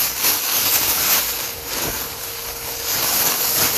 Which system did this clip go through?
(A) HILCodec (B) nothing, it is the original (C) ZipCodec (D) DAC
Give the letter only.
D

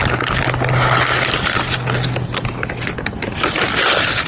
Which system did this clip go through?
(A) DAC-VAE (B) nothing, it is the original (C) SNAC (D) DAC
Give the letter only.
B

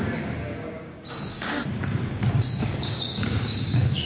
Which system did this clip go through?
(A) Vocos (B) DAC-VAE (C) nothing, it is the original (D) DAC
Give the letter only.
D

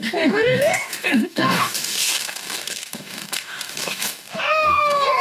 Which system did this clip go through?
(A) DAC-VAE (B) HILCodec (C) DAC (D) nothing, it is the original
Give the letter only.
C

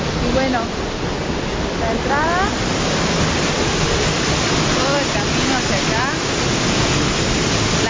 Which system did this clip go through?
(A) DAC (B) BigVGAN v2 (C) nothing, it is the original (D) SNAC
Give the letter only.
C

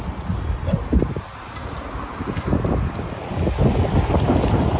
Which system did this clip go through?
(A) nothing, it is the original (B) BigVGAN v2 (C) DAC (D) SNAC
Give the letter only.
A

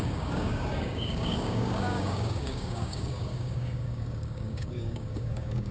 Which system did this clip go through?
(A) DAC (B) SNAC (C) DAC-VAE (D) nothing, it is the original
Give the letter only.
A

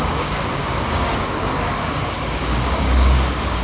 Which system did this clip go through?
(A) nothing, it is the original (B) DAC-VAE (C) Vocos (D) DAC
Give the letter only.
D